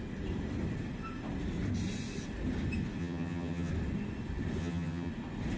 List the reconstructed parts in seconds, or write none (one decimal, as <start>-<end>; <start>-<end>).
3.0-3.7; 4.6-5.1